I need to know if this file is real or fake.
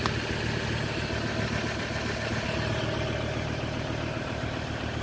real